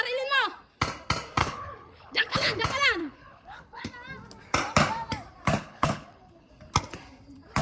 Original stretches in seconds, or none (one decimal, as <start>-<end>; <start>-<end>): 0.0-1.4; 2.6-3.0; 3.9-5.6; 6.5-7.6